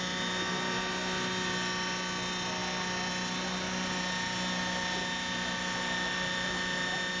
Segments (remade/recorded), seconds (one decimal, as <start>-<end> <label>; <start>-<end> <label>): 0.0-7.2 recorded